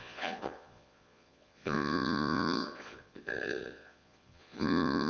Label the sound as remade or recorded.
remade